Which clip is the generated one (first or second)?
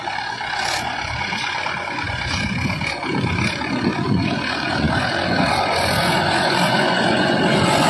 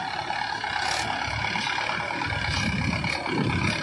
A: first